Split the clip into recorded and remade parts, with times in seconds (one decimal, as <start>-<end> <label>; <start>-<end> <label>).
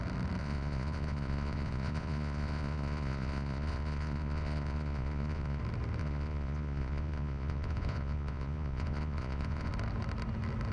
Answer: 0.0-0.4 recorded; 0.4-5.6 remade; 5.6-6.0 recorded; 6.0-9.7 remade; 9.7-10.7 recorded